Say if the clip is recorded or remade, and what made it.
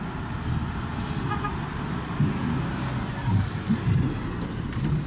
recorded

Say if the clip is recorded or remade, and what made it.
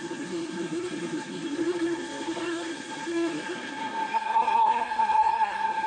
remade, codec, SNAC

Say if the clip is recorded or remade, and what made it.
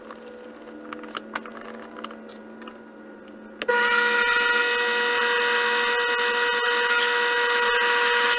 recorded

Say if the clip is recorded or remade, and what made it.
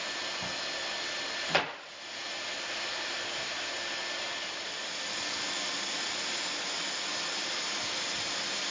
recorded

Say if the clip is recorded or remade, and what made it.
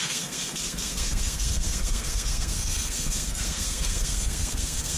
remade, codec, SNAC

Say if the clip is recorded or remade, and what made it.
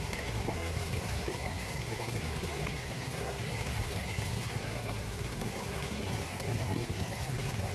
remade, codec, SNAC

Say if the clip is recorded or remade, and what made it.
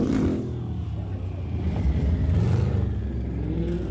recorded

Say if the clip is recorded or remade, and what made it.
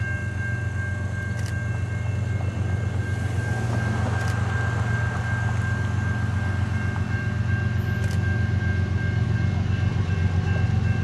recorded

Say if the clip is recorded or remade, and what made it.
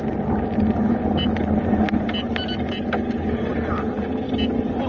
recorded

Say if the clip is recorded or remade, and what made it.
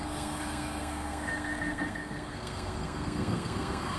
remade, codec, SNAC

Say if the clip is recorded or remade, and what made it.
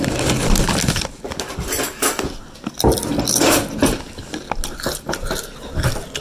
recorded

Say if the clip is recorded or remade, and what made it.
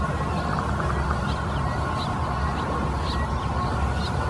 recorded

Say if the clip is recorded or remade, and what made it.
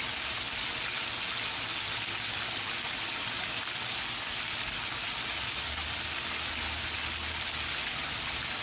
recorded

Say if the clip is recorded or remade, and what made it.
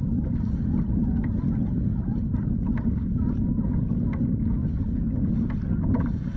recorded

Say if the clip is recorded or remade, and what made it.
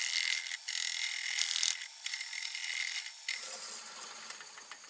recorded